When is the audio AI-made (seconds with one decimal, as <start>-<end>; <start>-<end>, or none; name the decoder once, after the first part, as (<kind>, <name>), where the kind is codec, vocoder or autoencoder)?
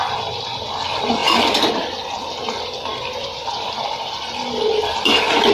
none